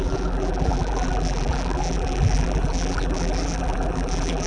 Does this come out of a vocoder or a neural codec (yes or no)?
yes